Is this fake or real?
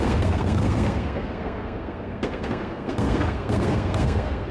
fake